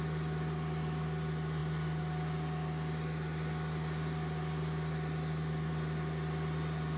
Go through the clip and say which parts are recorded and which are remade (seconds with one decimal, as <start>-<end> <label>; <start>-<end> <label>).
0.0-7.0 recorded